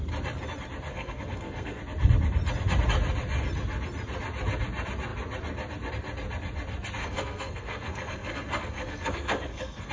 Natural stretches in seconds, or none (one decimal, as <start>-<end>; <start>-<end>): 0.0-0.9; 1.8-7.0

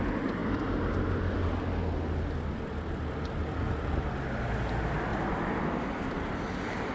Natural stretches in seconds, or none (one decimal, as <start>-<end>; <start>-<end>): 0.0-6.9

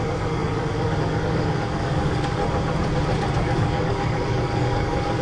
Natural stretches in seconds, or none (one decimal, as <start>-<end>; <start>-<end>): 2.4-3.4

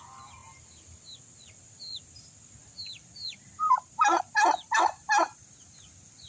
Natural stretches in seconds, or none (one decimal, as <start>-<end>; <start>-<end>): 0.0-6.3

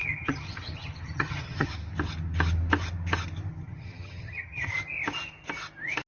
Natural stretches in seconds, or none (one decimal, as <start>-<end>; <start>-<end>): 1.7-3.5; 4.7-6.1

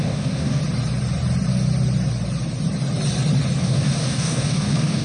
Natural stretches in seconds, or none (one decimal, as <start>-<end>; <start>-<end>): 0.6-3.6

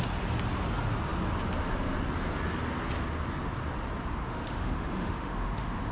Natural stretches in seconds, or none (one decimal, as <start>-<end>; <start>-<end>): 0.0-4.2

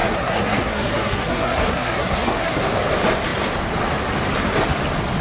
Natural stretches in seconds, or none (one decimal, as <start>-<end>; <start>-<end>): 2.6-5.2